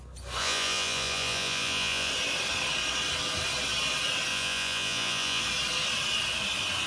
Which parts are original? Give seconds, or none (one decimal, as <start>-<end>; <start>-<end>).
0.0-0.4; 2.1-4.3; 5.4-6.9

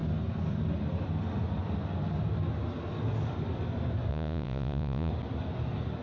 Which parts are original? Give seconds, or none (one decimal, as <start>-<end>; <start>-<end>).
0.0-4.1; 5.1-6.0

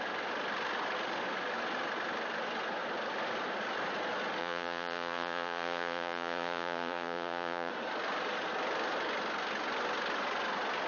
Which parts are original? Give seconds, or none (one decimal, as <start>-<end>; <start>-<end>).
0.0-4.4; 7.7-10.9

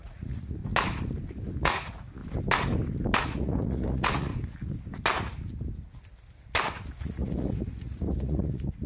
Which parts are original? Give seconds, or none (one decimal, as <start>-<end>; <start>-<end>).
0.6-1.6; 2.2-3.2; 4.3-7.0

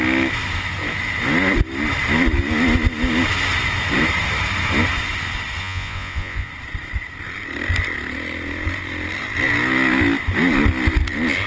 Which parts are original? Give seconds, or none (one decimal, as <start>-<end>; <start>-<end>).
0.0-5.6; 6.5-11.5

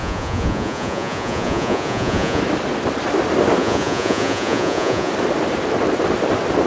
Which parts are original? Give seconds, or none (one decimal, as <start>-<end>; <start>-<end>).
2.4-3.6; 5.1-6.7